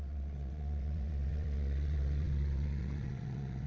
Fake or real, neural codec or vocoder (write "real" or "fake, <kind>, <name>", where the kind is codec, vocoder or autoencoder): fake, vocoder, WaveNeXt